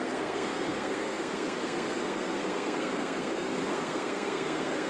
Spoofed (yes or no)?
yes